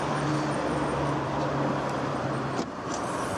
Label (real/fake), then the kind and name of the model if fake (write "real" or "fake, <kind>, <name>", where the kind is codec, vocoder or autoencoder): real